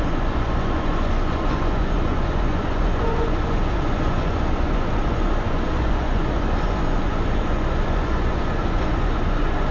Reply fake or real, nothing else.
fake